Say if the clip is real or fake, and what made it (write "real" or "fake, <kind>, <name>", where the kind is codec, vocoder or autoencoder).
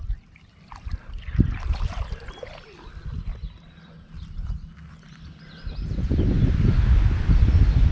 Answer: real